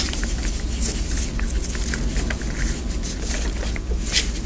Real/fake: real